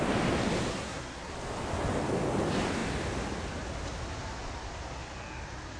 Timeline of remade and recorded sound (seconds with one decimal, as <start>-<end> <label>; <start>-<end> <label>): 0.0-0.7 recorded; 0.7-1.3 remade; 1.3-5.8 recorded